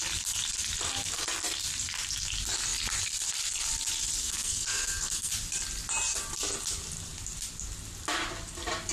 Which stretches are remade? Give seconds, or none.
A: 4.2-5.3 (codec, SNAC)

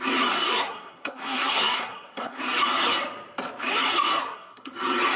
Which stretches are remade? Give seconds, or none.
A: 0.5-2.4 (codec, SNAC); 4.2-4.7

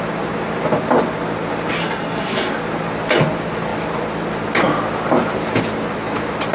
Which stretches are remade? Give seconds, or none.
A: 1.8-2.5 (codec, SNAC)

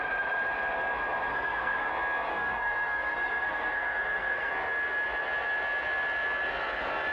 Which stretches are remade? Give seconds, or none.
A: 1.3-1.9 (codec, SNAC); 2.3-4.5